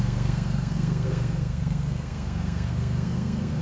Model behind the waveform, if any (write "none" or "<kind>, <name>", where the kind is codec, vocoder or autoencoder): codec, SNAC